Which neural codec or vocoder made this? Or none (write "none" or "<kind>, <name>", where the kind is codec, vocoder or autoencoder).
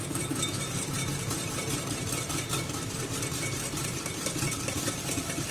vocoder, BigVGAN v2